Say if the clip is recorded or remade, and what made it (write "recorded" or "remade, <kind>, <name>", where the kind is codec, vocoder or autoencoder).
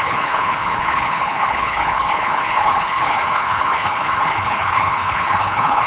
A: remade, codec, HILCodec